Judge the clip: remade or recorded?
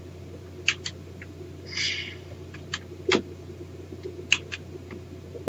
remade